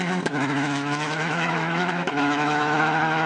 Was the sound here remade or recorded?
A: remade